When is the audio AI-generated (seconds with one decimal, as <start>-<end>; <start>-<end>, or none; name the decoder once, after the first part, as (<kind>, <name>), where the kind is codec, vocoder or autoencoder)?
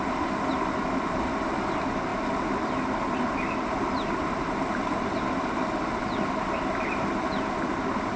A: none